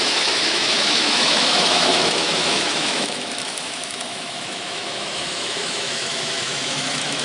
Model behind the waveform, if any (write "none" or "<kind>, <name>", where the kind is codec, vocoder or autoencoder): autoencoder, DAC-VAE